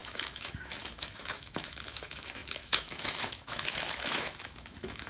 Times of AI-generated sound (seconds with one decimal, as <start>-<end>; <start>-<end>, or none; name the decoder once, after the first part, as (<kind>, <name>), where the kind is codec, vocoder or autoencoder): 0.0-5.1 (autoencoder, DAC-VAE)